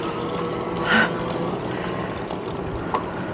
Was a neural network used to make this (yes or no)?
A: no